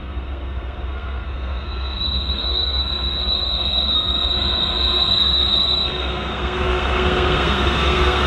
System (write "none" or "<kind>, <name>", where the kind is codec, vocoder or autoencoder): codec, SNAC